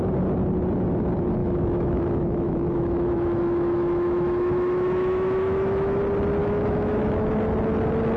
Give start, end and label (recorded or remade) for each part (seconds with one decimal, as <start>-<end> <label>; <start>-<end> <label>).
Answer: 0.0-1.4 recorded; 1.4-6.0 remade; 6.0-6.4 recorded; 6.4-7.1 remade; 7.1-8.2 recorded